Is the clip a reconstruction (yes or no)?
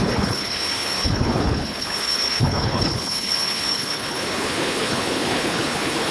yes